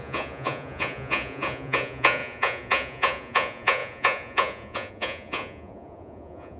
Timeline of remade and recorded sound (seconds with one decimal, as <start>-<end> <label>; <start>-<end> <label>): 0.0-6.6 remade